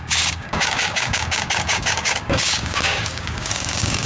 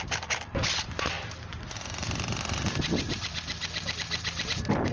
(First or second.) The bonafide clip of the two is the second